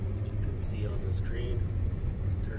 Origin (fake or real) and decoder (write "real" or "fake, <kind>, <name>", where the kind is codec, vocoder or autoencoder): fake, vocoder, Vocos